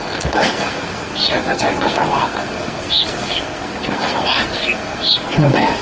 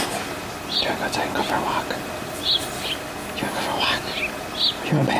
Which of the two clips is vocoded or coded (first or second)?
first